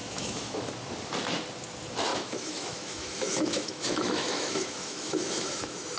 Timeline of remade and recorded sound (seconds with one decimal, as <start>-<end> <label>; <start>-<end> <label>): 0.0-0.7 remade; 0.7-2.1 recorded; 2.1-6.0 remade